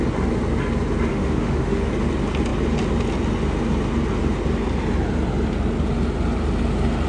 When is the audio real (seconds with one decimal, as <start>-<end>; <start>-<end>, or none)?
0.0-1.1; 1.9-7.1